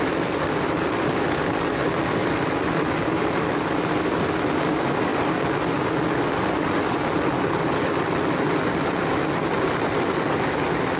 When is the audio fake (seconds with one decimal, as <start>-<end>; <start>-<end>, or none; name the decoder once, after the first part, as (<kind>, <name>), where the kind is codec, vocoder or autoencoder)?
2.2-4.2 (vocoder, BigVGAN v2)